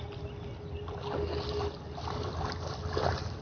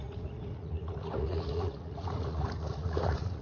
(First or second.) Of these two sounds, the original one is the first